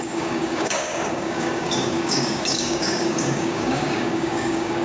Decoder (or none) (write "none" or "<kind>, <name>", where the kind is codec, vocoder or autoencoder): codec, DAC